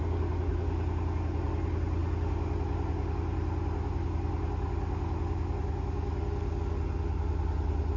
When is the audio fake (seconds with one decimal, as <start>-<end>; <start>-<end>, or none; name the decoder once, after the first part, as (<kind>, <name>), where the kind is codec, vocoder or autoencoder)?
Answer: none